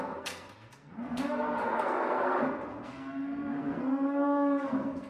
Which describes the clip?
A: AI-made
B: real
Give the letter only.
A